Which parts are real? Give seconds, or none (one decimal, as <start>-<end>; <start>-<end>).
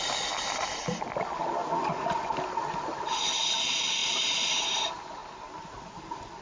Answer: 0.0-6.4